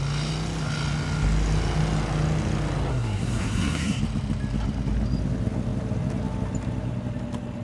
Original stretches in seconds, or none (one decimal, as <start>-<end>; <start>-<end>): 0.0-2.9; 4.0-7.6